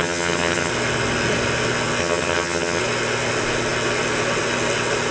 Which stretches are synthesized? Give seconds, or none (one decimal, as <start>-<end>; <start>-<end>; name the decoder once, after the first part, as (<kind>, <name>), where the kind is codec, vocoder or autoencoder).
0.0-0.7 (vocoder, HiFi-GAN); 2.0-2.8